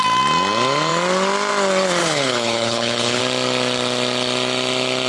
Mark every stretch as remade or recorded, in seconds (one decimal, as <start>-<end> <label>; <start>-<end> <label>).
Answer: 0.0-2.0 recorded; 2.0-3.2 remade; 3.2-5.1 recorded

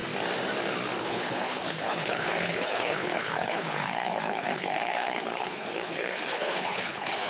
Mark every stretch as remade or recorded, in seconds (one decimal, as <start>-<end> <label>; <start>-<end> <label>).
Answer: 0.0-1.0 recorded; 1.0-7.3 remade